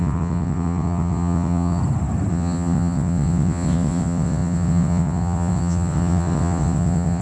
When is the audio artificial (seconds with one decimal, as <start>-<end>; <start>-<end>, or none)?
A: 0.0-1.8; 2.3-7.2